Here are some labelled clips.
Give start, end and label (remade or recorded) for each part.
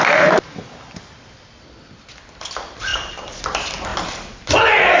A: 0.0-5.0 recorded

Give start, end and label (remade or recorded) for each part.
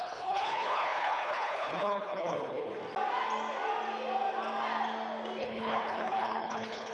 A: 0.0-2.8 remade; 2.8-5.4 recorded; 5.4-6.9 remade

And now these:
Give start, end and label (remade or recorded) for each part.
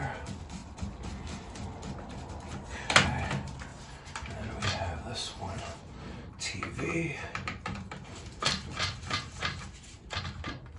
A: 0.0-3.7 recorded; 3.7-4.6 remade; 4.6-5.2 recorded; 5.2-10.0 remade; 10.0-10.8 recorded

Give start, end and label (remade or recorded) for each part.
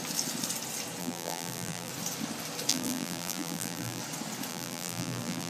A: 0.0-1.0 recorded; 1.0-1.9 remade; 1.9-2.7 recorded; 2.7-4.0 remade; 4.0-4.5 recorded; 4.5-5.5 remade